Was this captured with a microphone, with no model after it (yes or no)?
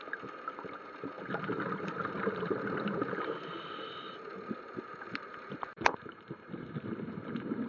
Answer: yes